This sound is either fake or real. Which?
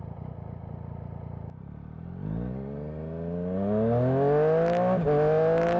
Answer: real